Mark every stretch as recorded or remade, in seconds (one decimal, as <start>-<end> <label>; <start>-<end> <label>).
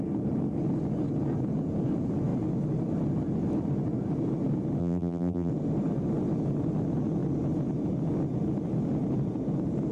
0.0-4.8 recorded; 4.8-5.5 remade; 5.5-9.9 recorded